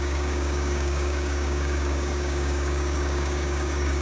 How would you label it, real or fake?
fake